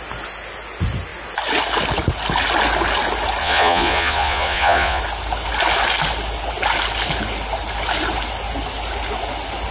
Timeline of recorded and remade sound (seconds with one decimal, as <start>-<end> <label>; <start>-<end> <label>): 0.0-3.4 recorded; 3.4-5.0 remade; 5.0-9.7 recorded